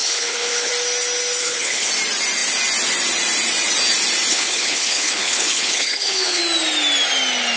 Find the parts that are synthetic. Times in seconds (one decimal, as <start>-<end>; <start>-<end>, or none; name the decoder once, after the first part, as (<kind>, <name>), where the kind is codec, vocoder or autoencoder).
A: 0.0-0.7 (codec, HILCodec); 1.4-1.9; 4.3-6.4